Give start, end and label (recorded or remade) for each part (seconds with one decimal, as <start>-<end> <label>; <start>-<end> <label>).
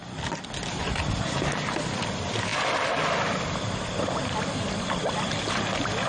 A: 0.0-6.1 recorded